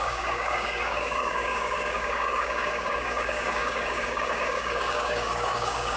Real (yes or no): no